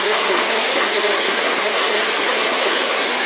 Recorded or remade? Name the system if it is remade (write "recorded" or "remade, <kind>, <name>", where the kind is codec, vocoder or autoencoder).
remade, codec, SNAC